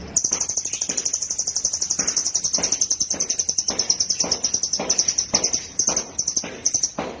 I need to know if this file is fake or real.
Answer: fake